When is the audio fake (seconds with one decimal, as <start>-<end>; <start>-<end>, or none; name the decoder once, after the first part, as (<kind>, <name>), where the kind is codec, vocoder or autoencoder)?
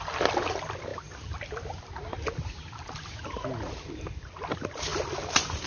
none